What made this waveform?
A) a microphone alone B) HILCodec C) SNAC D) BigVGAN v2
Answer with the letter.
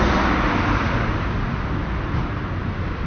A